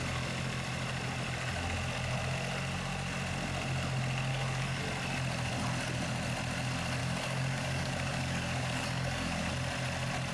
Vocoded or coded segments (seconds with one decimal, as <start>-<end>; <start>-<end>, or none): 4.3-4.8; 7.0-9.5